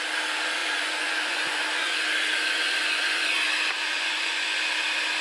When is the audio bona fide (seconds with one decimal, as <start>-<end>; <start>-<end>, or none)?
0.0-0.6; 3.5-3.9; 4.6-5.2